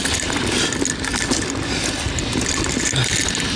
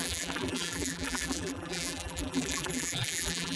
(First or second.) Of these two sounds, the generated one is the second